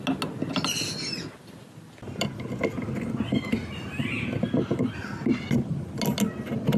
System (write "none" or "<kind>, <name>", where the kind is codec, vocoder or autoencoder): none